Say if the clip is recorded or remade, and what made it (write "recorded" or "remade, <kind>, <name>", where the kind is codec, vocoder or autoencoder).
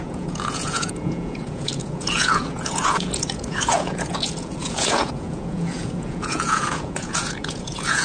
remade, vocoder, Vocos